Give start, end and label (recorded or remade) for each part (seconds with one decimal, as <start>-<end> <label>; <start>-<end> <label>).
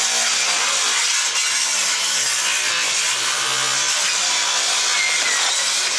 0.0-6.0 recorded